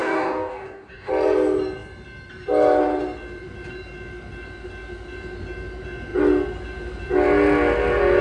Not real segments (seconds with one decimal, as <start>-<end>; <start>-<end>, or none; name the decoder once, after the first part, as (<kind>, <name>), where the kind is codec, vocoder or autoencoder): 0.0-1.1 (codec, DAC)